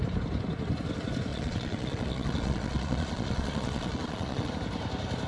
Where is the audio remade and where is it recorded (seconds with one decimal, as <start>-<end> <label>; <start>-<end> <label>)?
0.0-1.3 recorded; 1.3-4.5 remade; 4.5-5.3 recorded